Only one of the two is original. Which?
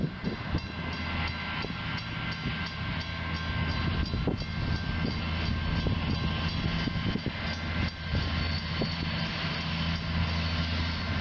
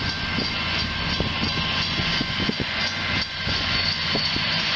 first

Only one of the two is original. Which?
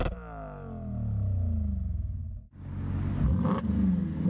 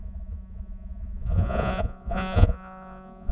first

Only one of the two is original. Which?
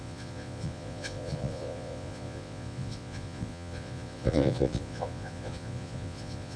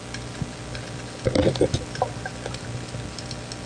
second